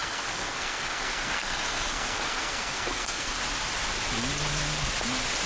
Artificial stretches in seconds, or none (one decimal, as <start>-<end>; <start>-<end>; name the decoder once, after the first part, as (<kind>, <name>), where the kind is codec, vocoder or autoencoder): 0.0-3.3 (codec, SNAC)